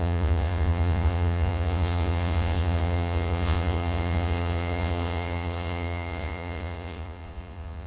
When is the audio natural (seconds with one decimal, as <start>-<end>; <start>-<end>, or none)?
none